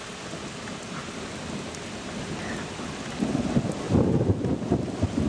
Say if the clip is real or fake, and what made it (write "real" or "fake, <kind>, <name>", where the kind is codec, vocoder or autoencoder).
real